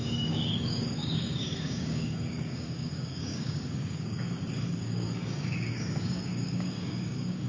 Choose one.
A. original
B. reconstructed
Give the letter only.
B